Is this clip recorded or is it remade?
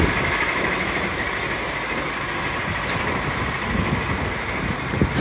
recorded